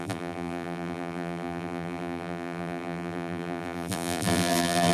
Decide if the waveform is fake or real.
fake